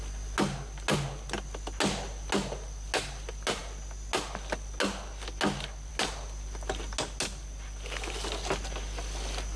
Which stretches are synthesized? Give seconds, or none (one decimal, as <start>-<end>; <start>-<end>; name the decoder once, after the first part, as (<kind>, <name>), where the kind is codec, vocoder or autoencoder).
none